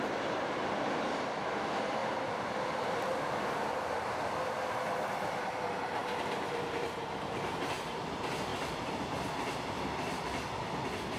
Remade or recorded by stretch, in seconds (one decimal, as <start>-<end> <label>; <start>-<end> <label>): 0.0-2.0 recorded; 2.0-3.3 remade; 3.3-6.0 recorded; 6.0-7.1 remade; 7.1-8.5 recorded; 8.5-9.1 remade; 9.1-11.2 recorded